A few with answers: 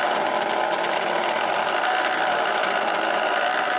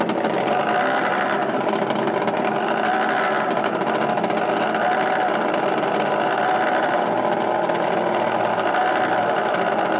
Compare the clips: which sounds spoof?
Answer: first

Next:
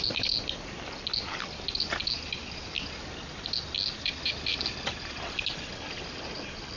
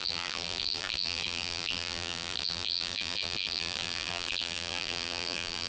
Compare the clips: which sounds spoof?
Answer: second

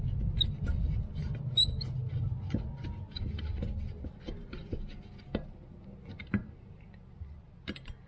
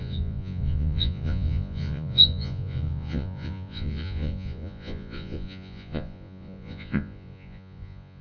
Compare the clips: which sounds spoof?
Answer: second